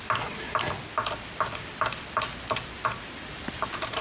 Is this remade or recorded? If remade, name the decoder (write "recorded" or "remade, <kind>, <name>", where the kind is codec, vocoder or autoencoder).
recorded